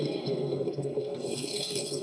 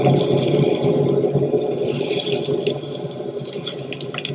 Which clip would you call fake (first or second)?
first